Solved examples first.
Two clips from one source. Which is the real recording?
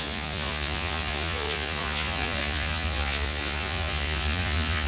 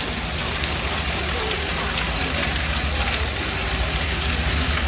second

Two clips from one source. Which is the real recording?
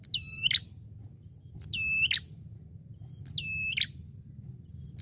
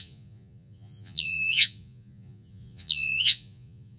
first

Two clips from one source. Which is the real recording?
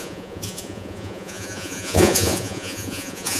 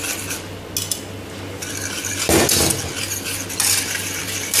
second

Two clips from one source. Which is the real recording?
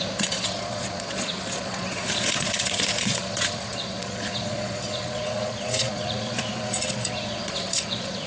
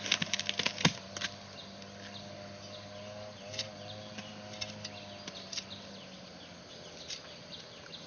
second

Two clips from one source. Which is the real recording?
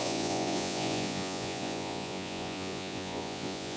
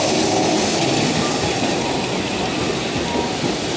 second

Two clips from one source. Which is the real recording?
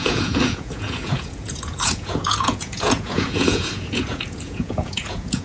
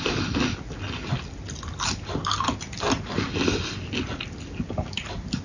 second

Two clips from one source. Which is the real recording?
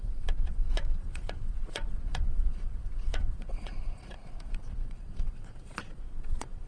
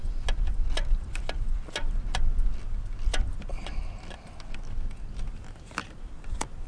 second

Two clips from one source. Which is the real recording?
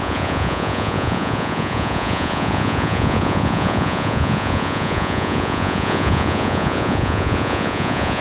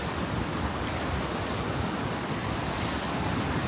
second